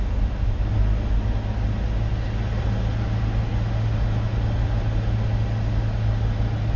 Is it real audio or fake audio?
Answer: real